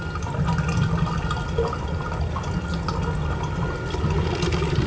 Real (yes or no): yes